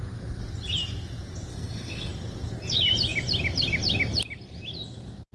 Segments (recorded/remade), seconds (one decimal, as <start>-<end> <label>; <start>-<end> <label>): 0.0-1.5 recorded; 1.5-2.1 remade; 2.1-5.3 recorded